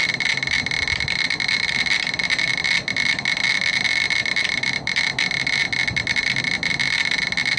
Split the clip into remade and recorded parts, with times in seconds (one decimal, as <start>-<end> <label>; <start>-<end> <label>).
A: 0.0-7.6 recorded

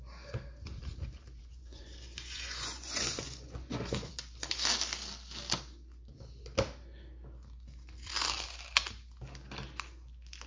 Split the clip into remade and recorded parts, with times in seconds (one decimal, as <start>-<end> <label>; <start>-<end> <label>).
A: 0.0-1.4 recorded; 1.4-4.1 remade; 4.1-10.5 recorded

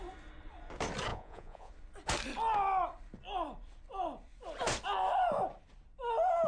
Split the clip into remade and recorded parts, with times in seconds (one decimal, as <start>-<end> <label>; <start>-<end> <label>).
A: 0.0-1.1 recorded; 1.1-1.7 remade; 1.7-6.5 recorded

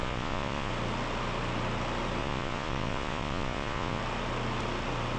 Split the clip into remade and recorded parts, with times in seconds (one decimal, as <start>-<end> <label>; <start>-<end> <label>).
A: 0.0-0.7 remade; 0.7-2.2 recorded; 2.2-4.0 remade; 4.0-5.2 recorded

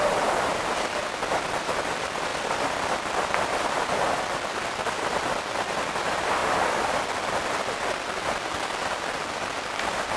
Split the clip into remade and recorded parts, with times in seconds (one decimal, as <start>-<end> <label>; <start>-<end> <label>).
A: 0.0-10.2 recorded

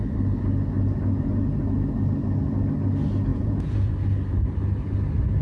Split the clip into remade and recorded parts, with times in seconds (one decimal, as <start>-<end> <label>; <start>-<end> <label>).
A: 0.0-3.3 recorded; 3.3-3.9 remade; 3.9-5.4 recorded